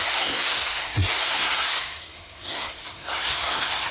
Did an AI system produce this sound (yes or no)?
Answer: yes